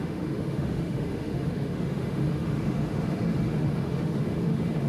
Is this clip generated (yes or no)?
yes